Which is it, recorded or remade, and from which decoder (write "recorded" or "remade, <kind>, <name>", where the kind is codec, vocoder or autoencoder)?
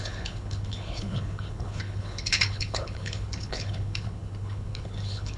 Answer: remade, codec, HILCodec